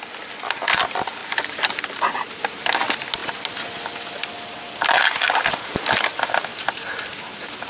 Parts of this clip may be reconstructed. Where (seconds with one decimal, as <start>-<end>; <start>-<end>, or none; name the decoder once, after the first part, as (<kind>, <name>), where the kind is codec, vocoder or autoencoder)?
1.2-2.3 (vocoder, BigVGAN v2); 6.5-7.0